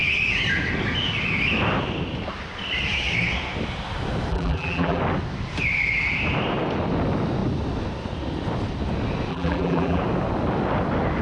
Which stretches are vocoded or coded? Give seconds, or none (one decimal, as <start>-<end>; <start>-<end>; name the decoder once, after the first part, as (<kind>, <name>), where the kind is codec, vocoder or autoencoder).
4.3-5.0 (vocoder, BigVGAN v2); 9.3-10.0